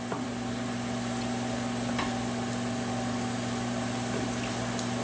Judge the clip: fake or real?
real